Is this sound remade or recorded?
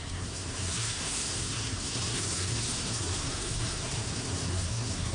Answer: remade